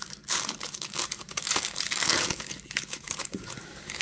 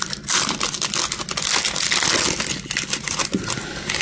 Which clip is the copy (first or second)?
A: first